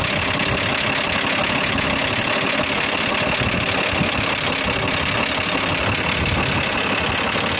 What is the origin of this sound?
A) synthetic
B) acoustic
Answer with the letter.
B